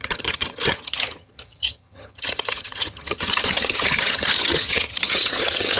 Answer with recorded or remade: remade